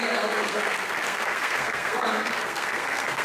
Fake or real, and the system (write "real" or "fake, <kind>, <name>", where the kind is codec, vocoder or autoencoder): fake, codec, SNAC